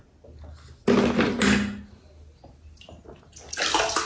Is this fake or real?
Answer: real